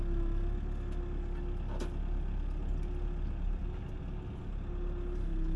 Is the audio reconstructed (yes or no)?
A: no